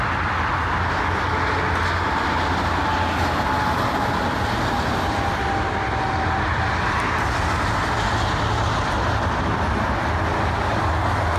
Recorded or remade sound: recorded